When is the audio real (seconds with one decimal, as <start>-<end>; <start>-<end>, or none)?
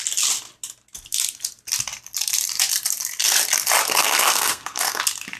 0.0-4.0; 5.0-5.4